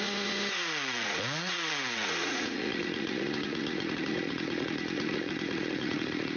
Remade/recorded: remade